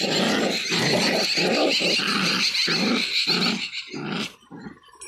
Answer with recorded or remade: recorded